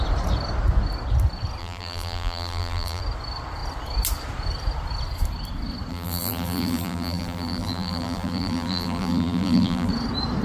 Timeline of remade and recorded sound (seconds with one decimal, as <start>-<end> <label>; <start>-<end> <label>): 0.0-1.6 recorded; 1.6-3.0 remade; 3.0-5.9 recorded; 5.9-9.9 remade; 9.9-10.4 recorded